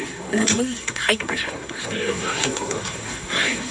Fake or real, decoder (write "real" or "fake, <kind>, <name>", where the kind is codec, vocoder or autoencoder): fake, codec, SNAC